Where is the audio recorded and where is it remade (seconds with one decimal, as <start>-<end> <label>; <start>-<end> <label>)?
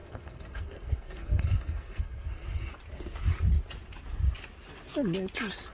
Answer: 0.0-2.7 remade; 2.7-5.7 recorded